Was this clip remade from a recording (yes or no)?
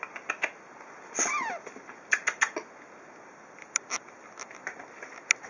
no